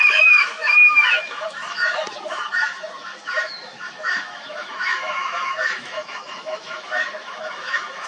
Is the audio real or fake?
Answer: fake